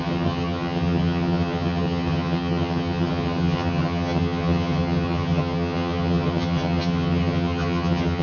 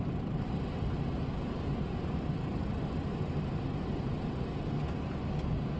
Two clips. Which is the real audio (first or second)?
second